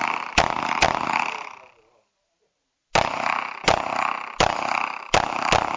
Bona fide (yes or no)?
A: yes